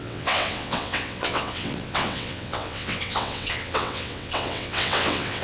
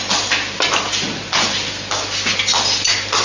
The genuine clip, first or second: second